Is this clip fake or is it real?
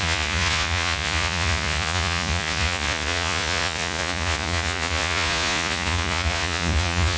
fake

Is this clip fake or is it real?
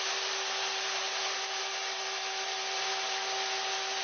real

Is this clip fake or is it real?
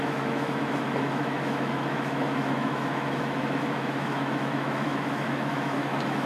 fake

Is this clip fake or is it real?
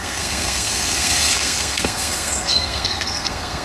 fake